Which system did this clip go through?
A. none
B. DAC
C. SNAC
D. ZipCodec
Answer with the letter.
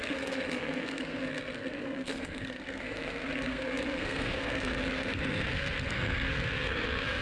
C